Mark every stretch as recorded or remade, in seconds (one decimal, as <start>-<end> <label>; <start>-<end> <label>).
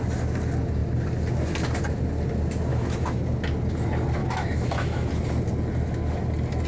0.0-2.7 recorded; 2.7-3.2 remade; 3.2-4.2 recorded; 4.2-5.1 remade; 5.1-6.7 recorded